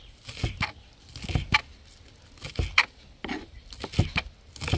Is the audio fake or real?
real